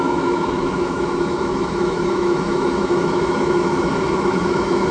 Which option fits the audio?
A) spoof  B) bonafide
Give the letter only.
A